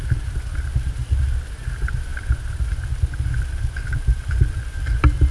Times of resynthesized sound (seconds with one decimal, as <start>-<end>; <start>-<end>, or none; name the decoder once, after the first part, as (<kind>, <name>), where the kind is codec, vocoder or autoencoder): none